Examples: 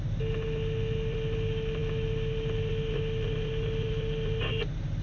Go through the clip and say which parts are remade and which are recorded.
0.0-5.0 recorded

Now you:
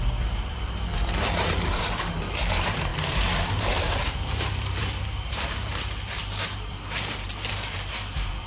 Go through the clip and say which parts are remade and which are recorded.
0.0-8.5 remade